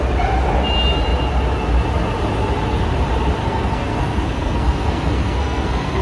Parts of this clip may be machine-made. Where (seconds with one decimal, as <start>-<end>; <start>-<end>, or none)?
3.4-6.0